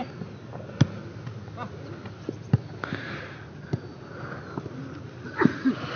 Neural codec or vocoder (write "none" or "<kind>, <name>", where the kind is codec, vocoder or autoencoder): none